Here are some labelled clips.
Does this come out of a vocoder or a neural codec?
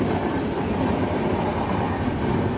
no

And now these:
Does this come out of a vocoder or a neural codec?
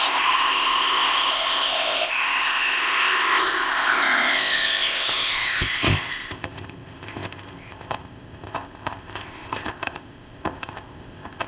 yes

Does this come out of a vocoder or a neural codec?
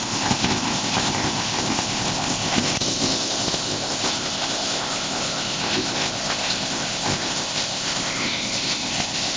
yes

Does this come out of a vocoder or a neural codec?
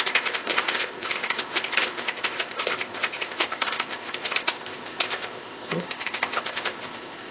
yes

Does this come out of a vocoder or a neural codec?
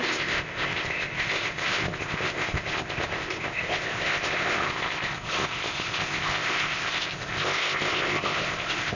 yes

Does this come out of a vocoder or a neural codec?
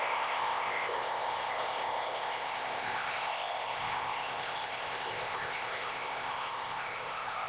yes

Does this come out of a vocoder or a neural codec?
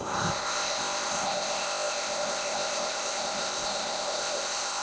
yes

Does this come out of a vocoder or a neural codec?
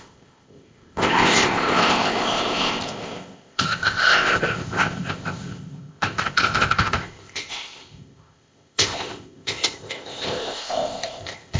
yes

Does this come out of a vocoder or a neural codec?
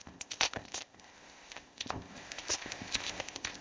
yes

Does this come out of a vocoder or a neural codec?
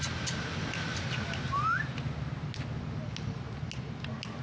no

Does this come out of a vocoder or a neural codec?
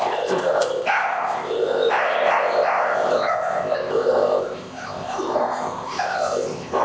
yes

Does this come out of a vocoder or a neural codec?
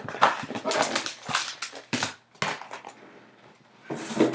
no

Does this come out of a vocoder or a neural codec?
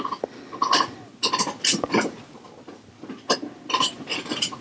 no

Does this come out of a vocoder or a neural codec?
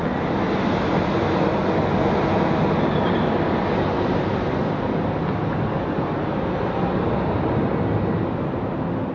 no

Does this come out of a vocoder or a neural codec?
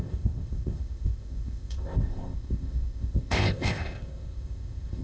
yes